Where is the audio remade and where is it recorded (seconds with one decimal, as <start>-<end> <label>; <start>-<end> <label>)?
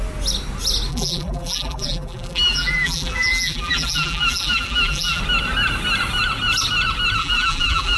0.0-0.9 recorded; 0.9-5.2 remade; 5.2-7.2 recorded; 7.2-8.0 remade